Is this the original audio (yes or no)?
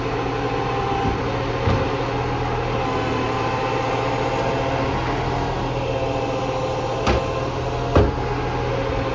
yes